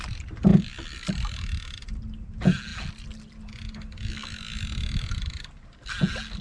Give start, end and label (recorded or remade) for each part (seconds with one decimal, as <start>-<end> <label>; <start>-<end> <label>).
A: 0.0-6.4 recorded